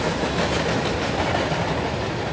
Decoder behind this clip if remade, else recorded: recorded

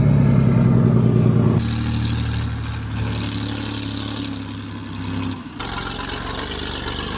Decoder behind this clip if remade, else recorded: recorded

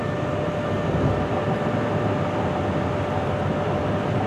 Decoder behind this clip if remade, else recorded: recorded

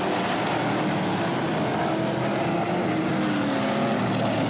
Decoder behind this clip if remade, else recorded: recorded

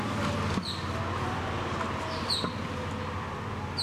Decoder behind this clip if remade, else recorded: recorded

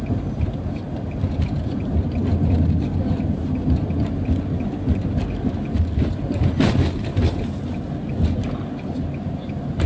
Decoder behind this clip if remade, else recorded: recorded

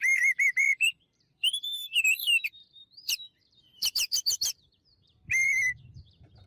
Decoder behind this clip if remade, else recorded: remade, vocoder, BigVGAN v2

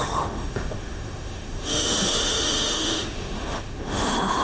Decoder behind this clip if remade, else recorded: remade, autoencoder, DAC-VAE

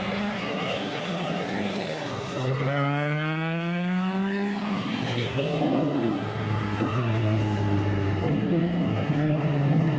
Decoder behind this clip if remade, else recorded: remade, codec, SNAC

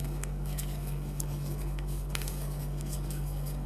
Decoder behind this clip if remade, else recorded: remade, codec, SNAC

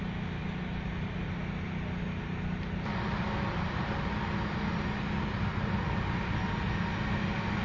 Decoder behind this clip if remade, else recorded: recorded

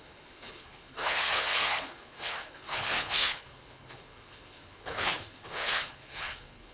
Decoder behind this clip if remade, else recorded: remade, codec, HILCodec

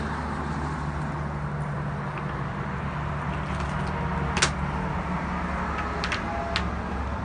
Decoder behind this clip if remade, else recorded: recorded